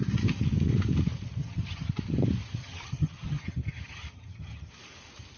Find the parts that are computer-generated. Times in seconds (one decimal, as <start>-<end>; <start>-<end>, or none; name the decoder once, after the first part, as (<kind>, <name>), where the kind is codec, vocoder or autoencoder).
1.4-1.9 (vocoder, HiFi-GAN); 2.6-4.7